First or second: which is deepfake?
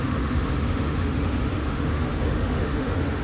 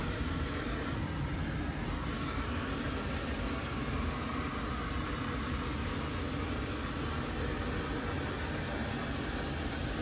first